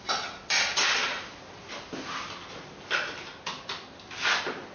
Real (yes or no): yes